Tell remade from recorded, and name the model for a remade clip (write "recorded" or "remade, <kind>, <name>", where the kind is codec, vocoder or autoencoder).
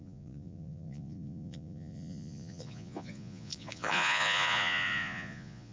remade, vocoder, Vocos